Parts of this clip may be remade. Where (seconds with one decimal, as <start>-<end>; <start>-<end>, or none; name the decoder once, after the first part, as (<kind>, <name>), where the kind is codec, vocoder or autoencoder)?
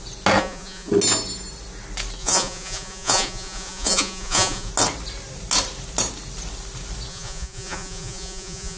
0.4-0.9 (vocoder, Vocos); 2.2-4.7; 7.1-8.8